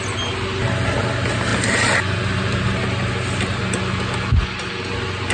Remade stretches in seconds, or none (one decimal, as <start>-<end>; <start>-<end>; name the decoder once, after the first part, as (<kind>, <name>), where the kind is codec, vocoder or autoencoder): none